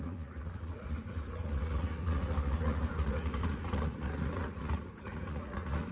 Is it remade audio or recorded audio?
remade